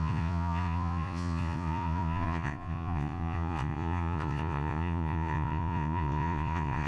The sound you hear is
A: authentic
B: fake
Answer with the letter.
B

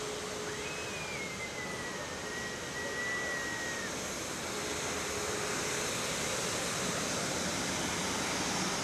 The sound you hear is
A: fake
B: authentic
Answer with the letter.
B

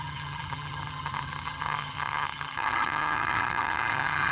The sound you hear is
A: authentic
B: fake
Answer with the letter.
B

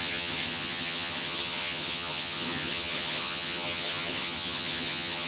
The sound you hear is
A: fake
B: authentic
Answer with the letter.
A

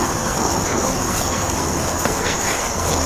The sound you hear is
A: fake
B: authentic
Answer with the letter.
A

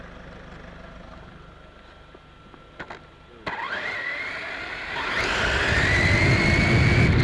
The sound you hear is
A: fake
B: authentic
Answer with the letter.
B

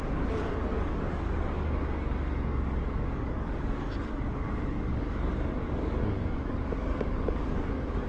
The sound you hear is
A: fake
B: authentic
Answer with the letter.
A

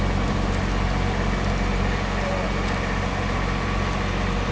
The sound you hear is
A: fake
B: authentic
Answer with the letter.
B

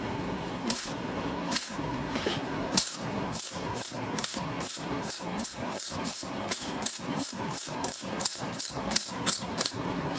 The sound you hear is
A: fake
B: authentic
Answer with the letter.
A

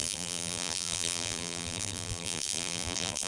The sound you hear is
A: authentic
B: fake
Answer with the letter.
B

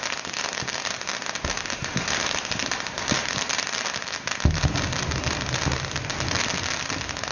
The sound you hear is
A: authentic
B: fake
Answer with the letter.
A